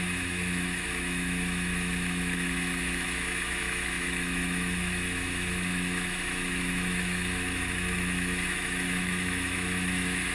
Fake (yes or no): yes